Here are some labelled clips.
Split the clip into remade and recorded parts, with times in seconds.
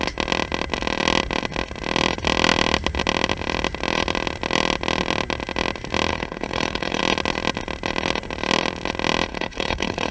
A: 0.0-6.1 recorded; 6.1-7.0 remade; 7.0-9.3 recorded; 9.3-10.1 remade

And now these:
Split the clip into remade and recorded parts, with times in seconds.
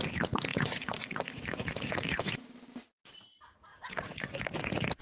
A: 0.0-0.5 recorded; 0.5-2.4 remade; 2.4-3.7 recorded; 3.7-4.4 remade; 4.4-5.0 recorded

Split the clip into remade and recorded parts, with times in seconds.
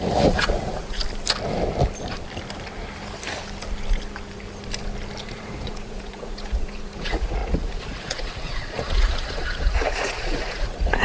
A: 0.0-1.0 remade; 1.0-5.2 recorded; 5.2-11.0 remade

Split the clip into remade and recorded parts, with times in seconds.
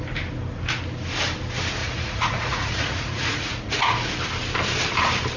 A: 0.0-1.8 recorded; 1.8-4.1 remade; 4.1-5.4 recorded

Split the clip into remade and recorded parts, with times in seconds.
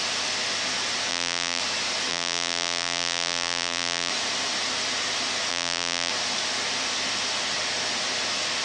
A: 0.0-1.1 recorded; 1.1-1.6 remade; 1.6-2.1 recorded; 2.1-4.1 remade; 4.1-5.5 recorded; 5.5-6.1 remade; 6.1-8.6 recorded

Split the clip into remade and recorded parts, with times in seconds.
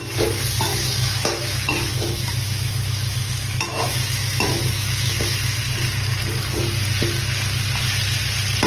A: 0.0-0.7 recorded; 0.7-5.6 remade; 5.6-8.7 recorded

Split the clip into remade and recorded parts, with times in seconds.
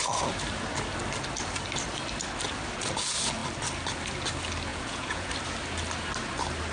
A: 0.0-4.7 recorded; 4.7-5.3 remade; 5.3-6.7 recorded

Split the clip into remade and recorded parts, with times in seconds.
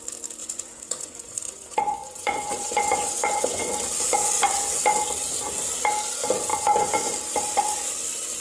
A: 0.0-0.4 recorded; 0.4-3.7 remade; 3.7-6.5 recorded; 6.5-7.1 remade; 7.1-8.4 recorded